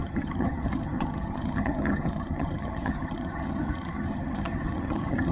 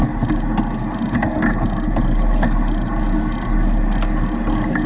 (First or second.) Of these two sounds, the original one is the second